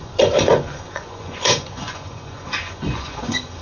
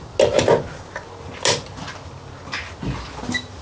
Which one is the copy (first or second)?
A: first